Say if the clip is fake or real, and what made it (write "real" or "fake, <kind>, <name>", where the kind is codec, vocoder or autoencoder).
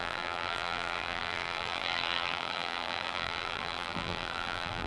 fake, vocoder, BigVGAN v2